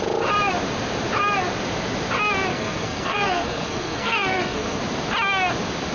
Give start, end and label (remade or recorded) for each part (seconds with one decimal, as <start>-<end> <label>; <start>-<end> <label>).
0.0-2.5 recorded; 2.5-4.8 remade; 4.8-5.9 recorded